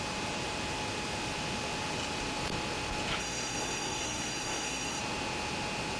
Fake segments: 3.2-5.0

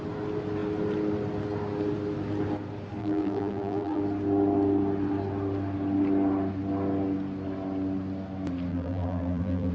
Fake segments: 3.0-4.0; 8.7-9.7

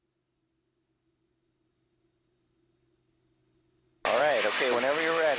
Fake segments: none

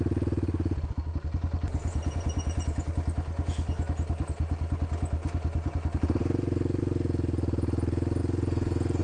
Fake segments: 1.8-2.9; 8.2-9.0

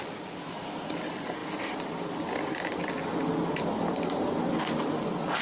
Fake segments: none

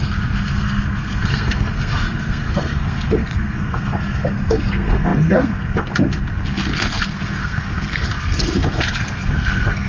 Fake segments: 0.0-9.9

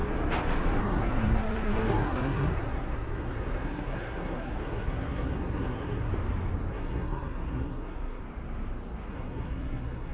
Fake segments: 0.8-6.1; 6.7-8.2; 9.1-10.1

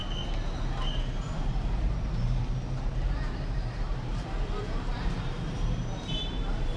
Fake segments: 1.3-6.8